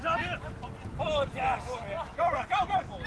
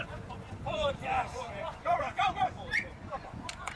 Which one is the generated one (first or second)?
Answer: second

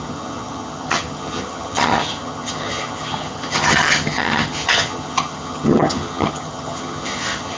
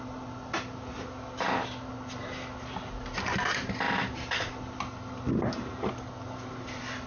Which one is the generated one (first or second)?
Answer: first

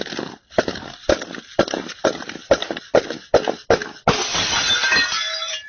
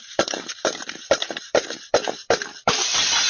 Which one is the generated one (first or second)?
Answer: second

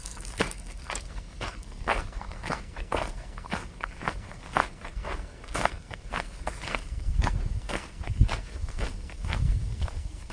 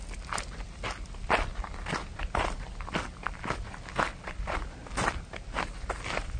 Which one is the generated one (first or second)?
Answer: first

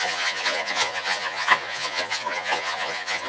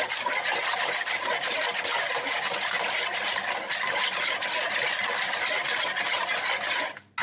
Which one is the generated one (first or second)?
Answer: first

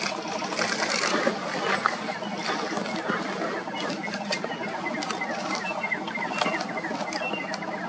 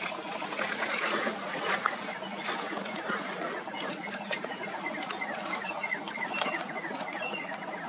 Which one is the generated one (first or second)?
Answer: second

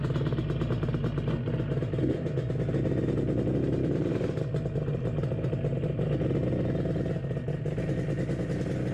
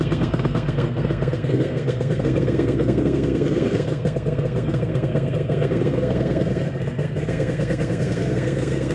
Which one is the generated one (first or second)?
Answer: second